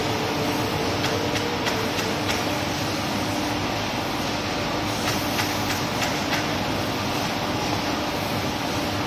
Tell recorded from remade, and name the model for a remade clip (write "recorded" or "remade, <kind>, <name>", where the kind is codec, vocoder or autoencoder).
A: recorded